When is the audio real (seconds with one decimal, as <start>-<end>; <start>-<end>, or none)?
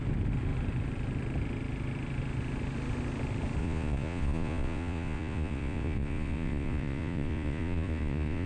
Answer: 0.0-3.6